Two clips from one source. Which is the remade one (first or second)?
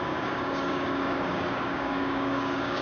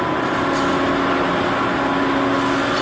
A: first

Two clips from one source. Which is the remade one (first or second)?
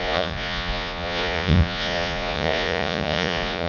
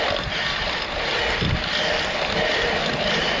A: first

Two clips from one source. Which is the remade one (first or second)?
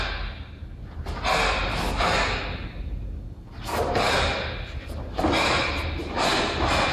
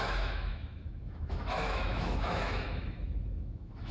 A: second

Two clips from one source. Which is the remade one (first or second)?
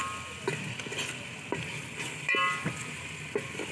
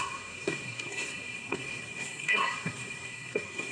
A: second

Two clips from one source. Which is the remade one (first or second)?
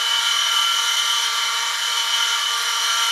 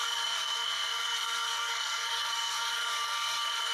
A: second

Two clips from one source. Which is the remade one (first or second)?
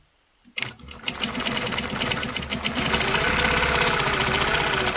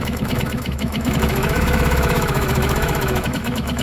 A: second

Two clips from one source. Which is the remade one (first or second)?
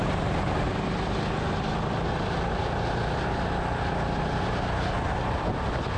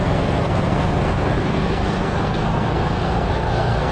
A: second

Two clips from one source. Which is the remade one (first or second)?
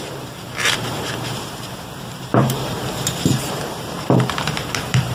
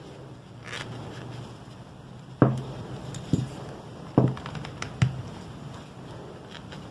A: first